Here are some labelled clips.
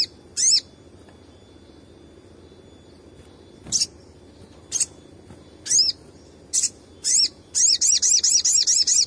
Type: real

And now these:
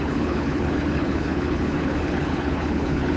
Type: fake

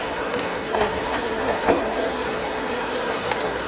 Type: fake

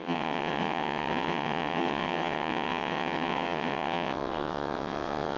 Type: fake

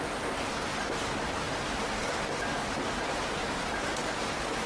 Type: real